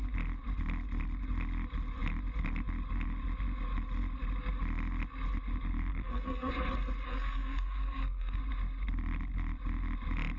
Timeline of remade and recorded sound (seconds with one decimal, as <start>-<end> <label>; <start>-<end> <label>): 0.0-5.9 recorded; 5.9-6.5 remade; 6.5-7.1 recorded; 7.1-8.4 remade; 8.4-10.4 recorded